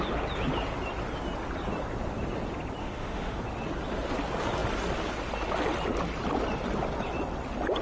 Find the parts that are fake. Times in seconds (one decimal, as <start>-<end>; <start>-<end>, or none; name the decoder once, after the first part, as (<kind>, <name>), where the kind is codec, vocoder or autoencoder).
2.8-3.4 (autoencoder, DAC-VAE)